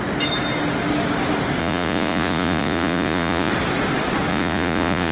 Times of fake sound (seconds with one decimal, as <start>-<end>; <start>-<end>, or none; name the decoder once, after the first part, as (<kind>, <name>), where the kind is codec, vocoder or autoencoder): 1.6-3.5 (vocoder, Vocos); 4.3-5.1